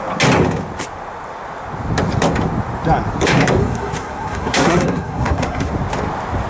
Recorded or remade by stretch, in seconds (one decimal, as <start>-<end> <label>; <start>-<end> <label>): 0.0-3.6 recorded; 3.6-5.7 remade; 5.7-6.5 recorded